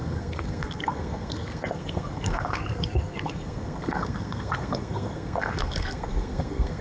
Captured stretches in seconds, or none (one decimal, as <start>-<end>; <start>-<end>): none